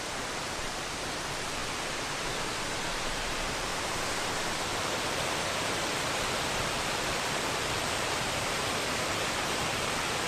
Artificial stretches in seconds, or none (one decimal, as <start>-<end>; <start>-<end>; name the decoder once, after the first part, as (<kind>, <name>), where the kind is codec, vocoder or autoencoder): 0.0-1.6 (vocoder, BigVGAN v2); 2.9-3.7; 4.8-10.3